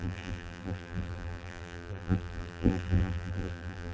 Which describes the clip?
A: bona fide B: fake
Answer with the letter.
B